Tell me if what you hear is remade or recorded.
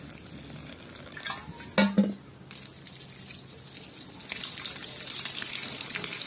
recorded